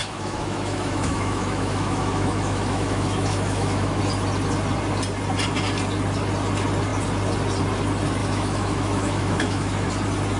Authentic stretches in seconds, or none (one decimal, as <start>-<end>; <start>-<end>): 4.0-8.2; 9.9-10.4